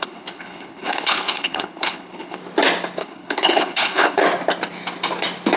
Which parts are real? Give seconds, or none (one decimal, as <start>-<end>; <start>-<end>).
2.4-3.0; 4.2-5.6